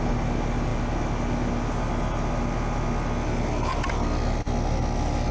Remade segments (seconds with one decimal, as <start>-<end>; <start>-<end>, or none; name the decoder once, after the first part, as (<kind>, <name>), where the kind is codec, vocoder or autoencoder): none

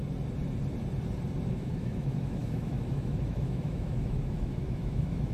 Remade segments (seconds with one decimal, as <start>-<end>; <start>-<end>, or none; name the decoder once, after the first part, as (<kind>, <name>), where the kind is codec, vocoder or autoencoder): 1.5-5.3 (autoencoder, DAC-VAE)